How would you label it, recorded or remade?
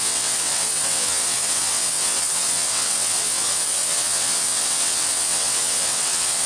remade